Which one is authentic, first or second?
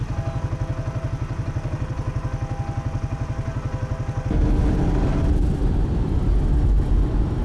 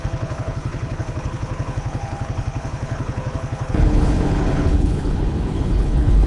first